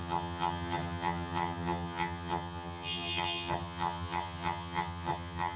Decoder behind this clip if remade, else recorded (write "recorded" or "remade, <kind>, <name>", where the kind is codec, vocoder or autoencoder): remade, vocoder, HiFi-GAN